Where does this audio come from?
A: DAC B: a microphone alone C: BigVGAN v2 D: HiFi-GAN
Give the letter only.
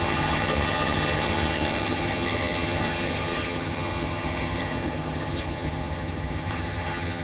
D